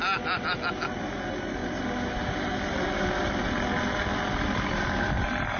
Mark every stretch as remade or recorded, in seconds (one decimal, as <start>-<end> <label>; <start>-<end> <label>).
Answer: 0.0-5.6 recorded